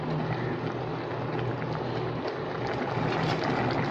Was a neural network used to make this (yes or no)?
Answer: no